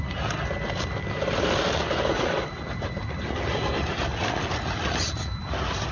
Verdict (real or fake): real